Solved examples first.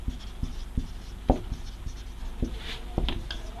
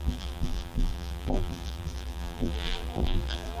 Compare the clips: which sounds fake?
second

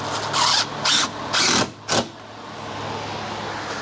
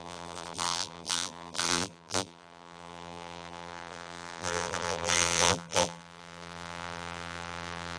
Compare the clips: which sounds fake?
second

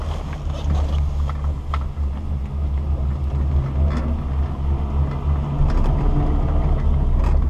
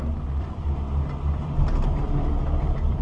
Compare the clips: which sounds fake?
second